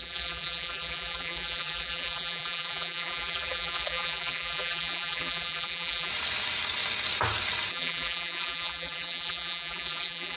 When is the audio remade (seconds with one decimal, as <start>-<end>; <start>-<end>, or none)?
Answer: 0.0-6.1; 7.7-10.4

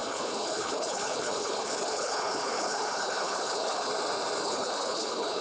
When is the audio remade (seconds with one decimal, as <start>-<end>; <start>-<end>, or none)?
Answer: 0.0-3.9; 4.4-5.4

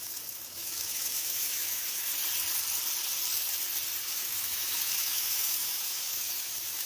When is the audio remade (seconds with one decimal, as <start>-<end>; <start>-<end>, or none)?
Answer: 0.0-2.1; 4.0-6.9

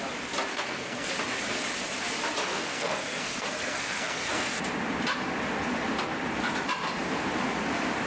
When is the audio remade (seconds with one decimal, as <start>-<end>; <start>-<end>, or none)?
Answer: 0.5-1.1; 2.5-4.6

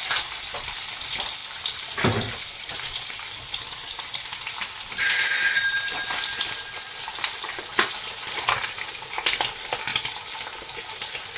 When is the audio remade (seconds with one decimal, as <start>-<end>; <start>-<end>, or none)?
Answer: 0.0-9.9; 10.9-11.4

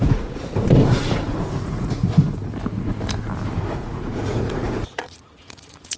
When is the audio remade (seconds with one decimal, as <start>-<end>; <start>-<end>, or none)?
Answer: 0.0-2.5; 3.6-6.0

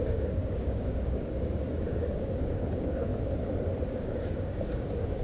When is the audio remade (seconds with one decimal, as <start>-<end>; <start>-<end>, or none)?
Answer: 0.0-3.1; 3.9-5.2

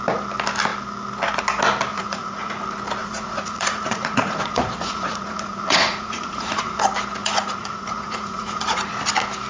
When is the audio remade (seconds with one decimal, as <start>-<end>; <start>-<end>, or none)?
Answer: 1.9-2.6; 3.0-6.8; 7.2-8.9